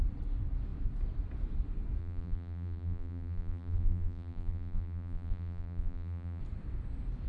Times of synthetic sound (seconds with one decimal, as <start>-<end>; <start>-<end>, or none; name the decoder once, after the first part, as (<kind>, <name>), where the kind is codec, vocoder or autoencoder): 2.0-6.4 (vocoder, BigVGAN v2)